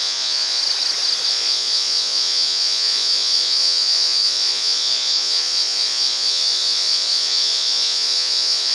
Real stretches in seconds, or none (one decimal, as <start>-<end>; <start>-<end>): 0.6-1.3